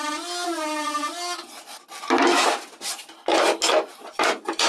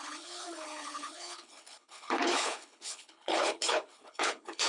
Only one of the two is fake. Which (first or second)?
second